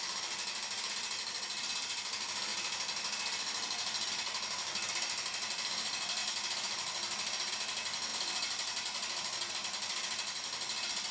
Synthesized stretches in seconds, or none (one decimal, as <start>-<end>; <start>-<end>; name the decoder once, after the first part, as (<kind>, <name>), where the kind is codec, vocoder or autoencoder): 8.1-9.5 (vocoder, BigVGAN v2)